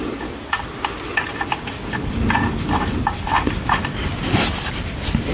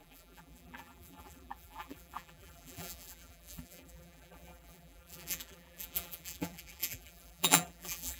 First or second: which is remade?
second